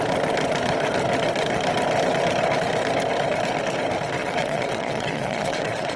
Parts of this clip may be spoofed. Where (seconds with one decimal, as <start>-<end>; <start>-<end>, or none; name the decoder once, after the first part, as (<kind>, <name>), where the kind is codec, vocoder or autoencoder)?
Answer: 4.2-6.0 (vocoder, Vocos)

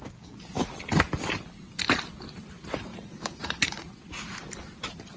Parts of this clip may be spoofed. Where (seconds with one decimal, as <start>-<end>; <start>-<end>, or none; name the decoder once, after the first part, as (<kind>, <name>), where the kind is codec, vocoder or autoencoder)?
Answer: 2.9-3.9 (vocoder, Vocos)

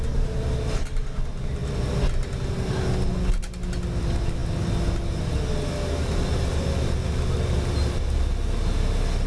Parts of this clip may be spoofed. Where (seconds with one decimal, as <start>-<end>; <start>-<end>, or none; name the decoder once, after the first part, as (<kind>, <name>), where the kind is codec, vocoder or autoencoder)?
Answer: none